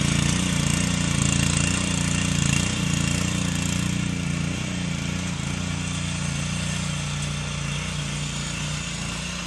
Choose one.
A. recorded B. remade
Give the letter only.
A